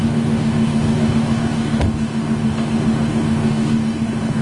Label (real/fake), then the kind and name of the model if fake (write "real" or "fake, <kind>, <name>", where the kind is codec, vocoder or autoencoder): fake, codec, DAC